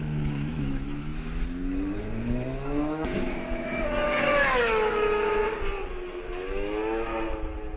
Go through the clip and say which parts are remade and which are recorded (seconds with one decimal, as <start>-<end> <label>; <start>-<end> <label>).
0.0-5.4 remade; 5.4-5.9 recorded; 5.9-7.1 remade; 7.1-7.8 recorded